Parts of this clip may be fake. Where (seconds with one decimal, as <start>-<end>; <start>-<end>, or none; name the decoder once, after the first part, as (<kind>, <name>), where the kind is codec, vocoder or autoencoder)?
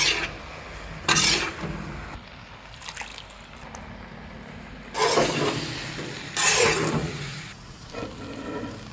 7.0-7.9 (vocoder, Vocos)